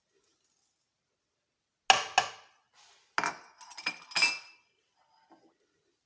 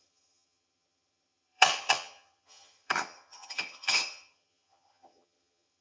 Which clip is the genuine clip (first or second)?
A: first